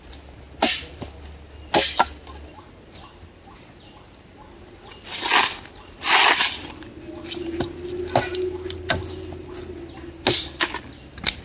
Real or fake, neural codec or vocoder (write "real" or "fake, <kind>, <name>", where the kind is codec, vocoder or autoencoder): real